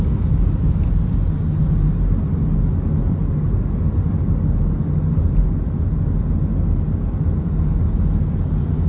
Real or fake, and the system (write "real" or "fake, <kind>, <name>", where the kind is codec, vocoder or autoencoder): real